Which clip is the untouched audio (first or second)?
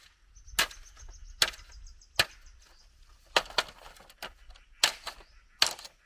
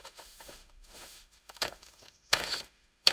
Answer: first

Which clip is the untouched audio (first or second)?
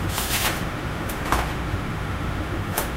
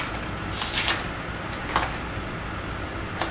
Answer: second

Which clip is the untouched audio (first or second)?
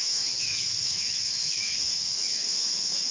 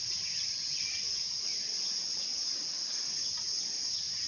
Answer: second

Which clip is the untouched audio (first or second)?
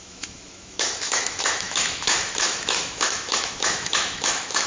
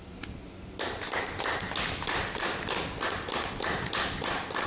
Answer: second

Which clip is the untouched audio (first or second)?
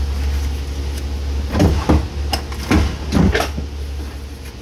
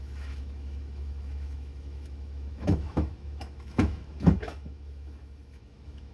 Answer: first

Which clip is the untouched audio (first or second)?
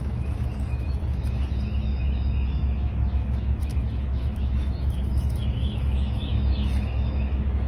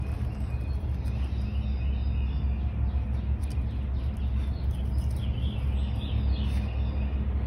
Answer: second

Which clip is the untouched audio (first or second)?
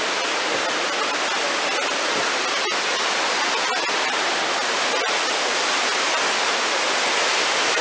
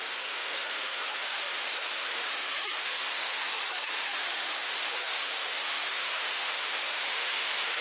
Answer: first